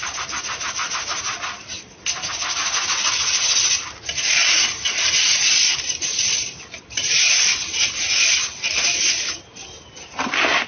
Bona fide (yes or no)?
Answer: yes